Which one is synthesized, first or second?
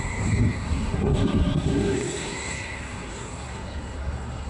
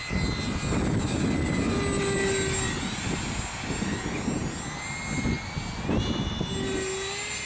first